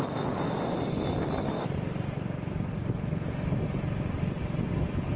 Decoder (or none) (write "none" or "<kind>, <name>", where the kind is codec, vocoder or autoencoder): none